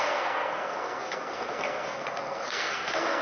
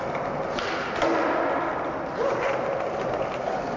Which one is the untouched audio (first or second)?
second